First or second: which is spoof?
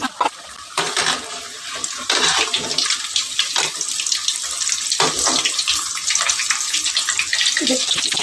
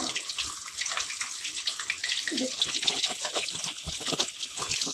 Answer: second